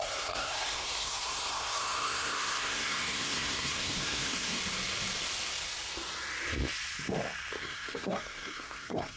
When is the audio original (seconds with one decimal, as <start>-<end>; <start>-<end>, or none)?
4.6-7.6